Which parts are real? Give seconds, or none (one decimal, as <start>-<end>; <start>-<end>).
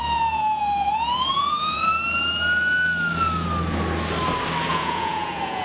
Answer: 1.9-4.7